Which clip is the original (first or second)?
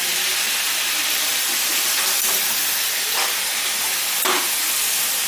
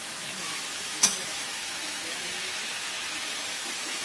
first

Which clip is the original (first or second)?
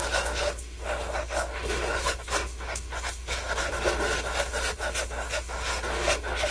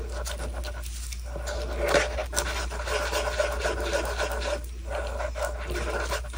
second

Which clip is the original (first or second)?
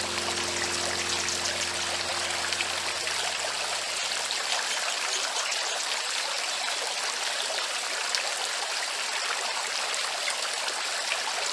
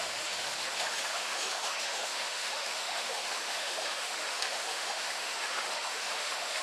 first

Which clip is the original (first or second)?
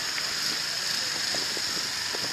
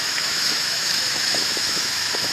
first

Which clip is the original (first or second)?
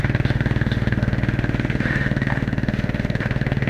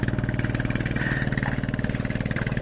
second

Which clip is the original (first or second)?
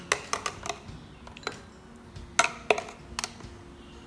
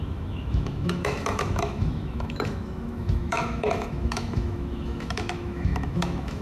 first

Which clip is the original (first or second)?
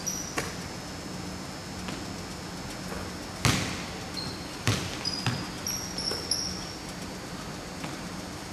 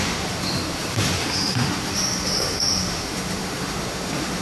first